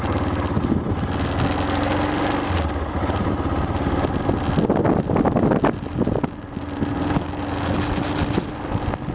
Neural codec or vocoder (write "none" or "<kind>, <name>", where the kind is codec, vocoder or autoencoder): none